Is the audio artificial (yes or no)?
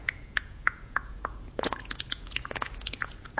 yes